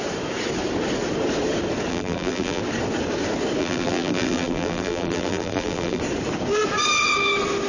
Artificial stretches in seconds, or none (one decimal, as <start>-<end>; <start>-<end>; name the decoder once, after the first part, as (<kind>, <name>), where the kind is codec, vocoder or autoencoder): 1.9-2.6 (vocoder, BigVGAN v2); 3.6-6.0